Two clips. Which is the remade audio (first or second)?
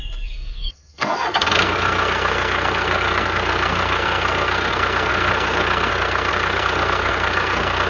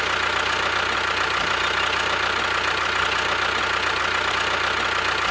first